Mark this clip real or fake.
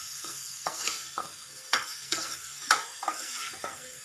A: fake